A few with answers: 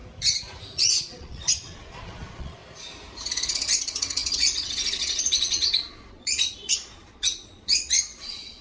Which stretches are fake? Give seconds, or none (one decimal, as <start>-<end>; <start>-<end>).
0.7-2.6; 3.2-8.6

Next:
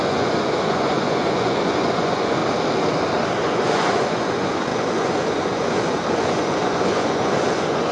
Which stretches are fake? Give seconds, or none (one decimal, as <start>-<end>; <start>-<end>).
0.0-2.4; 3.4-7.9

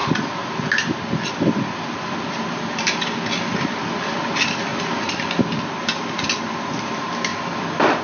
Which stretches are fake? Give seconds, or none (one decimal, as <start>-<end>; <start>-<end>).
3.9-4.7; 6.1-7.3

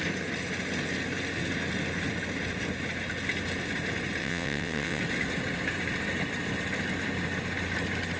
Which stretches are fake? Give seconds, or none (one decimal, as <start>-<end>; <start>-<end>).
4.2-5.0